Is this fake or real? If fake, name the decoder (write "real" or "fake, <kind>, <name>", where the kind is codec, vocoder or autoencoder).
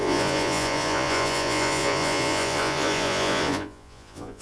fake, vocoder, Vocos